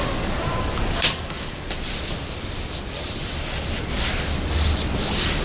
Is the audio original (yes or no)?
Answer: no